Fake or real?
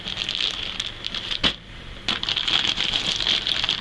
real